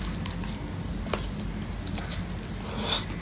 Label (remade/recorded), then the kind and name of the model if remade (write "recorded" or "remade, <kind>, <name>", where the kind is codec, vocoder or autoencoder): recorded